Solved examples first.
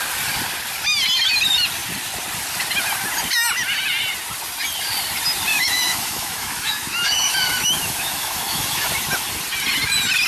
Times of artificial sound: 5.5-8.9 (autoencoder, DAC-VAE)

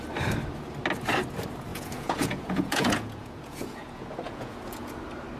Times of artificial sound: 1.7-4.9 (vocoder, Vocos)

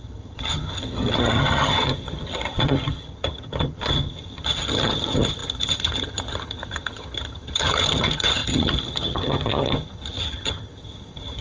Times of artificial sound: 0.0-11.4 (vocoder, HiFi-GAN)

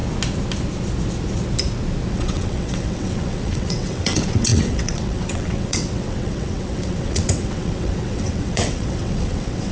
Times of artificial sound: 2.1-9.7 (vocoder, WaveNeXt)